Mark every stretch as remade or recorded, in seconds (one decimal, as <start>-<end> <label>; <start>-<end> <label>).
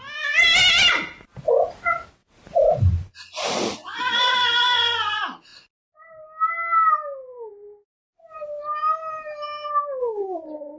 0.0-2.2 recorded; 2.2-4.0 remade; 4.0-10.8 recorded